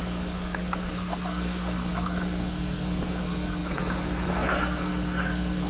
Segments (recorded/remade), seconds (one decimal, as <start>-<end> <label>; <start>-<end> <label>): 0.0-5.7 remade